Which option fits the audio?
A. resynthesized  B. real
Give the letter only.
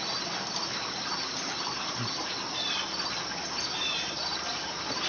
B